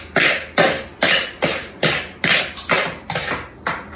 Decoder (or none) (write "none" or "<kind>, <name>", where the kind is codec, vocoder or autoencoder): none